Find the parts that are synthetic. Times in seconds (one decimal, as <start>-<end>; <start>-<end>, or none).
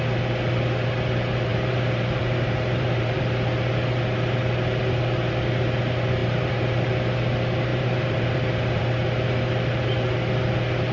1.5-3.2; 6.2-6.9; 7.7-8.8